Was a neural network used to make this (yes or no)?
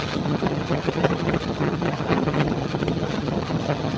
yes